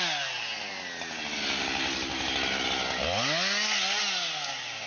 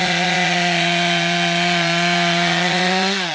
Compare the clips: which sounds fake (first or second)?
second